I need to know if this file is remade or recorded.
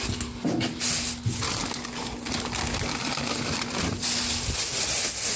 recorded